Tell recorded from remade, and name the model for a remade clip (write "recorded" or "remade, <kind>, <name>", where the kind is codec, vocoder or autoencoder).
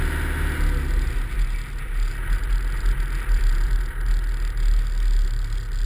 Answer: recorded